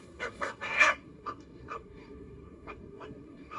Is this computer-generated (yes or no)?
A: yes